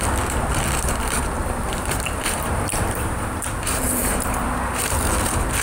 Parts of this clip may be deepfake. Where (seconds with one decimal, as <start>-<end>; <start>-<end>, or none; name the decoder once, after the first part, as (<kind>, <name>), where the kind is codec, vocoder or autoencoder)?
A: 1.4-4.8 (vocoder, BigVGAN v2)